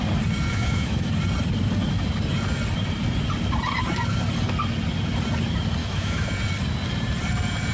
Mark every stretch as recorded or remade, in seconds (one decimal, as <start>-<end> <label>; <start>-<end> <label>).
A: 0.0-0.5 recorded; 0.5-1.1 remade; 1.1-5.8 recorded; 5.8-6.3 remade; 6.3-7.7 recorded